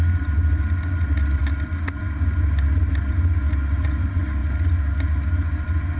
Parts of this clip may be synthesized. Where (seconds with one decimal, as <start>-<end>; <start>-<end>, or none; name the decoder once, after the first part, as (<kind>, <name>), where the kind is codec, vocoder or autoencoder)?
none